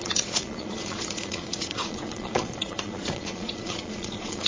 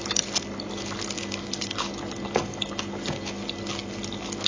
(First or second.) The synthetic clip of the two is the first